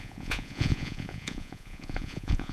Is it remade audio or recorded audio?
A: remade